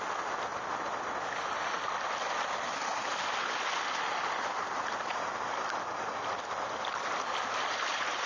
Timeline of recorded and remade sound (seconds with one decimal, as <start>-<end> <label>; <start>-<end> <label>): 0.0-8.3 recorded